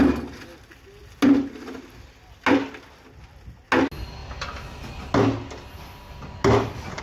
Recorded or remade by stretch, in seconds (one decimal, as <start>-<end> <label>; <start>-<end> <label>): 0.0-7.0 recorded